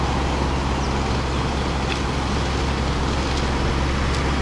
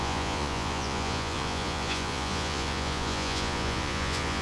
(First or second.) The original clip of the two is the first